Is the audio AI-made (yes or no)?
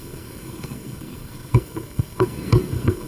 yes